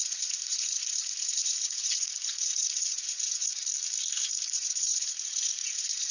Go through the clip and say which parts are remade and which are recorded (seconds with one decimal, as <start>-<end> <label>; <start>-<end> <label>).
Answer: 0.0-3.7 remade; 3.7-4.2 recorded; 4.2-6.1 remade